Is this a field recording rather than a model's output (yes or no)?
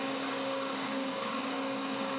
no